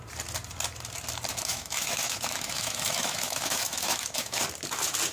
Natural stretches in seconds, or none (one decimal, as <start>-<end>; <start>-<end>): 0.0-1.3; 4.4-5.1